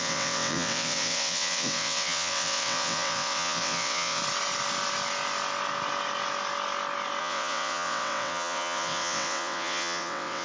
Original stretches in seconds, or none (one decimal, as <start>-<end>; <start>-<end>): 4.2-7.2